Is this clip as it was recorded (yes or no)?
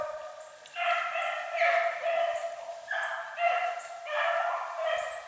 yes